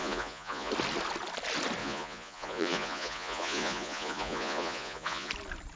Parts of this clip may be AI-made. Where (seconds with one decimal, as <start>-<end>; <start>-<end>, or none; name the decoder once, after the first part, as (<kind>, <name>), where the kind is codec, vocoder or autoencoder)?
0.0-0.7 (vocoder, Vocos); 1.8-5.3